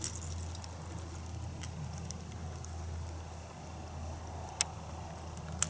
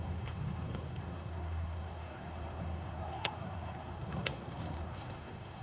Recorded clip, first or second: first